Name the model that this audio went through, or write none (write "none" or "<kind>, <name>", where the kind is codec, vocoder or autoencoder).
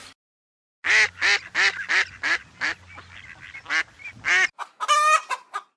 none